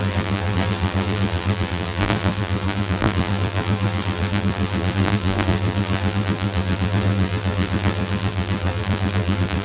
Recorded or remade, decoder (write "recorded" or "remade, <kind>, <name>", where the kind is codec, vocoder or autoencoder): remade, vocoder, BigVGAN v2